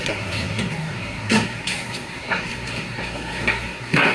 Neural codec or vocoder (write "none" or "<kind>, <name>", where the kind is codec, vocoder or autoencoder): codec, SNAC